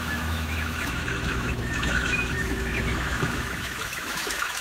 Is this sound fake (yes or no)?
yes